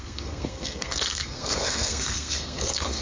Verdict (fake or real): fake